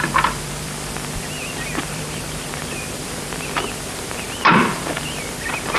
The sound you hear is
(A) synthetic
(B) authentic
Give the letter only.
A